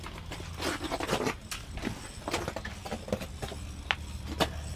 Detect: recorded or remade recorded